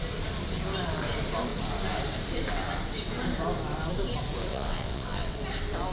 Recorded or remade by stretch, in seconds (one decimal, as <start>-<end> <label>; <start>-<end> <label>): 0.0-4.5 recorded; 4.5-5.4 remade; 5.4-5.9 recorded